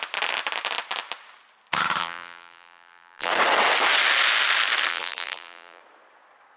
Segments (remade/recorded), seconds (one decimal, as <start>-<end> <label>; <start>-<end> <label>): 0.0-2.0 recorded; 2.0-3.3 remade; 3.3-4.9 recorded; 4.9-5.8 remade; 5.8-6.6 recorded